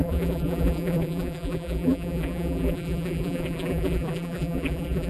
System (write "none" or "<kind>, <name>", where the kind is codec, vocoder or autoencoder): vocoder, BigVGAN v2